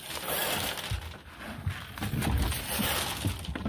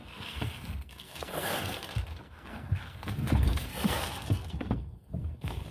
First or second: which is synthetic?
second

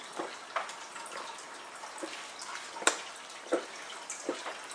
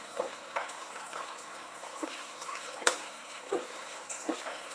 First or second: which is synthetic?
second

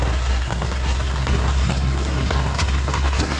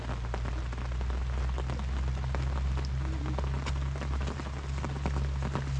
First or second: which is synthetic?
first